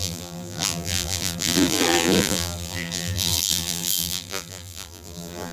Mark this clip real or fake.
fake